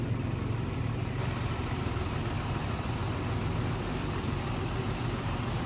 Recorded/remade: recorded